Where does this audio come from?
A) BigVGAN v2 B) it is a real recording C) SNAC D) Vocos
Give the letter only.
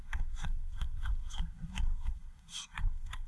C